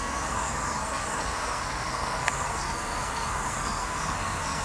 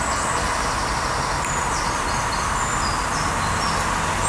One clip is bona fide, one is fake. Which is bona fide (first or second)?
second